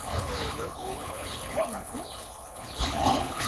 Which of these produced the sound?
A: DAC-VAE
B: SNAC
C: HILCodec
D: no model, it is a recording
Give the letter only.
C